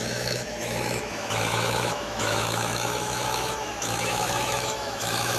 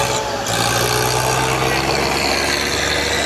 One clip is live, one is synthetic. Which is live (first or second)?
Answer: second